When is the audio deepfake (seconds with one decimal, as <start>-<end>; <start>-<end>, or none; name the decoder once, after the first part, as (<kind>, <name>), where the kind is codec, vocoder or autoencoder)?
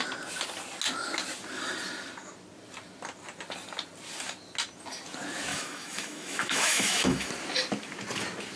5.5-7.3 (autoencoder, DAC-VAE)